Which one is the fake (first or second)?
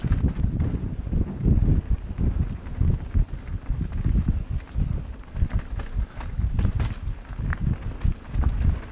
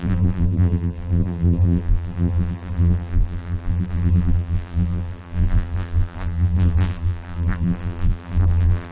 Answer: second